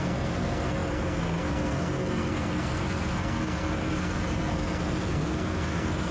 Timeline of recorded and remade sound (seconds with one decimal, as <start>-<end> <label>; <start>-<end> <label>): 0.0-6.1 remade